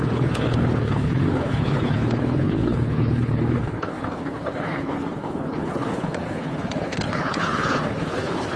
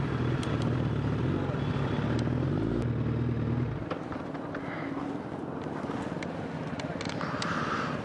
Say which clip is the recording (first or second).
second